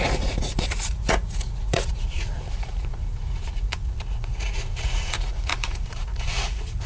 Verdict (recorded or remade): remade